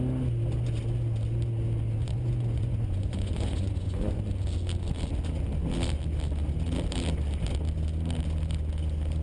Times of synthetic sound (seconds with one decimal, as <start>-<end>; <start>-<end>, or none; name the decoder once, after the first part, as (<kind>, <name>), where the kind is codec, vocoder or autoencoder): 2.0-4.2 (vocoder, Vocos)